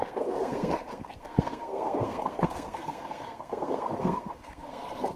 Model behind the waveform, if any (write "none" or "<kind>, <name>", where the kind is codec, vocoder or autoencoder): codec, SNAC